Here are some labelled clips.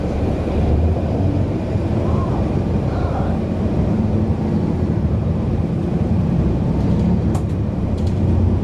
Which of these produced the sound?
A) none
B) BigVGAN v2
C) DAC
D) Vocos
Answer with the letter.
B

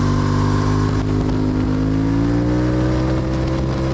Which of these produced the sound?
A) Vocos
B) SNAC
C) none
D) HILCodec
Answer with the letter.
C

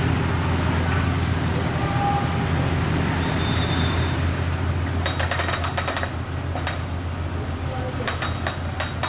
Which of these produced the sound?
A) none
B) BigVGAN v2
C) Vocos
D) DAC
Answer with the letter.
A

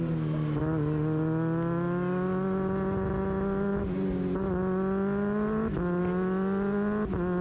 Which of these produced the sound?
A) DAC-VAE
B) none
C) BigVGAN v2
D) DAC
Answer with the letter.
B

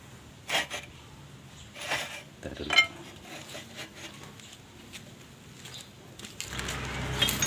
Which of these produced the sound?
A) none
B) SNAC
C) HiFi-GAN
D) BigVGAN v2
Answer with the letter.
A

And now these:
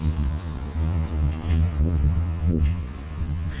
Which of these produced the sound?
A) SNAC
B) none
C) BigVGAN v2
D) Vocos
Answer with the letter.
D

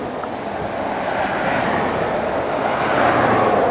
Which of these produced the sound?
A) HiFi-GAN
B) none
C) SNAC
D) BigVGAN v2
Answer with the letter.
B